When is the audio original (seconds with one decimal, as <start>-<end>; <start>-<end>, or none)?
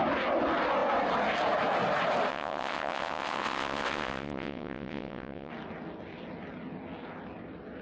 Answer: 0.0-2.3; 5.5-7.8